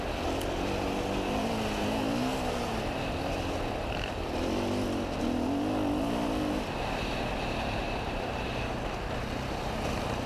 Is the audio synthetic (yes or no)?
no